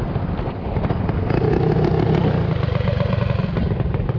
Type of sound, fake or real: real